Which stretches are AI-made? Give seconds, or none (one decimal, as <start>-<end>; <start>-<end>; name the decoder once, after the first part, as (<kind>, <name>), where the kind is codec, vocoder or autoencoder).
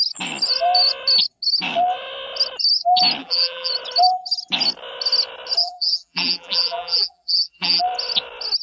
3.2-3.7 (vocoder, BigVGAN v2); 5.6-7.8